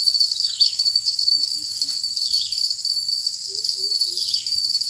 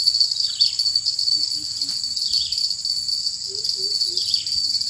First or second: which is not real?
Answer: first